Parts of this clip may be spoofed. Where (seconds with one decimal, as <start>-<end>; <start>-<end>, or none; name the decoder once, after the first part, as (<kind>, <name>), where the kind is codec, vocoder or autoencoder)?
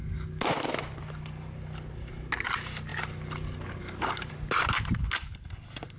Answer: none